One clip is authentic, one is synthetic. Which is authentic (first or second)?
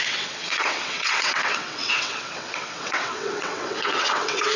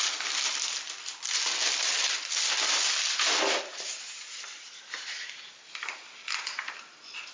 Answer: second